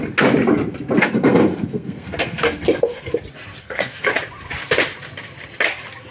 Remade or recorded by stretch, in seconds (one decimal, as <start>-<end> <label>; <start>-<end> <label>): 0.0-1.0 recorded; 1.0-3.1 remade; 3.1-3.6 recorded; 3.6-4.1 remade; 4.1-6.1 recorded